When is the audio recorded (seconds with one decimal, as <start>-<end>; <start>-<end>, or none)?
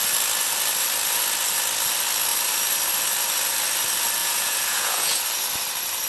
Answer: 0.0-4.2; 5.2-6.1